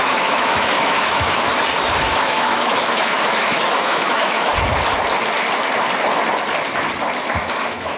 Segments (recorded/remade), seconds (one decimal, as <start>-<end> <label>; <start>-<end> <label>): 0.0-1.5 remade; 1.5-2.1 recorded; 2.1-4.5 remade; 4.5-7.4 recorded; 7.4-8.0 remade